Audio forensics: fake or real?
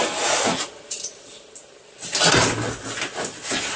real